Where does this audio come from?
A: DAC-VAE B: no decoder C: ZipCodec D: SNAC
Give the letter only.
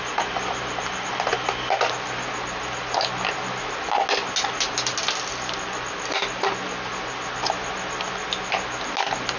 B